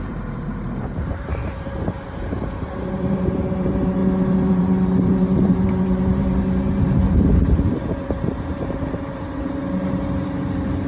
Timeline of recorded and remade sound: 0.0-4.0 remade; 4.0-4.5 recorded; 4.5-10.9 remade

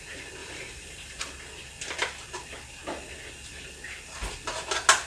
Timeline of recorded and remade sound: 0.0-0.4 recorded; 0.4-1.2 remade; 1.2-5.1 recorded

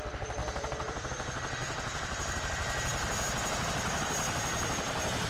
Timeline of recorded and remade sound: 0.0-0.4 recorded; 0.4-1.1 remade; 1.1-1.6 recorded; 1.6-2.4 remade; 2.4-5.3 recorded

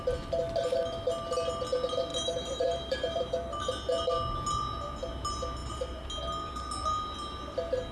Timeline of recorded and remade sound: 0.0-2.1 recorded; 2.1-3.7 remade; 3.7-7.9 recorded

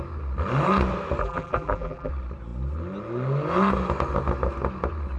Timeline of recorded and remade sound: 0.0-1.2 recorded; 1.2-2.1 remade; 2.1-5.2 recorded

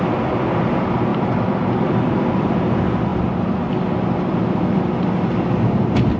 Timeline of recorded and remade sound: 0.0-1.1 recorded; 1.1-2.3 remade; 2.3-6.2 recorded

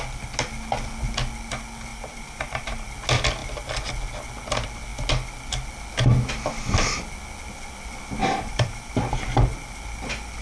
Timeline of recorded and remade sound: 0.0-1.9 recorded; 1.9-2.9 remade; 2.9-8.2 recorded; 8.2-8.9 remade; 8.9-10.4 recorded

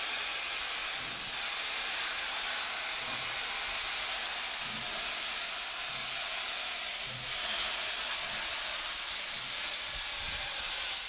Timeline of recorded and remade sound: 0.0-11.1 recorded